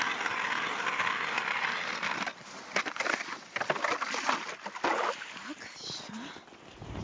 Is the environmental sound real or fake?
real